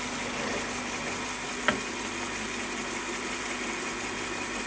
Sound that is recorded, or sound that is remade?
recorded